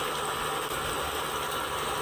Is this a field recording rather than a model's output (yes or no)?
yes